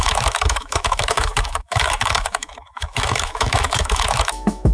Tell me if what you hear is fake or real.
fake